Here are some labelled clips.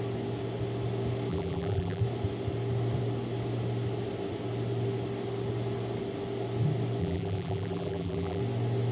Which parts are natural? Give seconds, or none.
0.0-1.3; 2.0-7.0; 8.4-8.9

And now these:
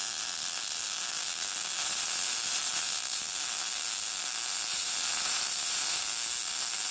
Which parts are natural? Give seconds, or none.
0.0-1.8; 3.2-4.7; 6.0-6.9

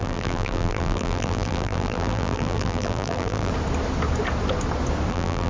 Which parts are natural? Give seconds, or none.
3.5-5.1